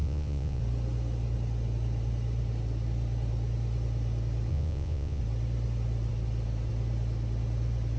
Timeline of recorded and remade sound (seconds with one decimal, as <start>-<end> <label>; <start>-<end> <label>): 0.0-0.6 remade; 0.6-4.5 recorded; 4.5-5.2 remade; 5.2-8.0 recorded